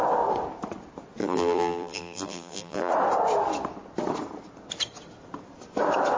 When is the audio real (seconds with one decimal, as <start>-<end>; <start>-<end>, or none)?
0.0-1.2; 2.9-6.2